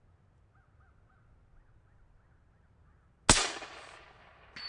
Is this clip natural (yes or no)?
yes